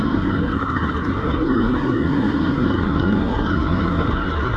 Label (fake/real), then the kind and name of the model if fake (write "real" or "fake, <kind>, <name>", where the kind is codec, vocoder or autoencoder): fake, codec, SNAC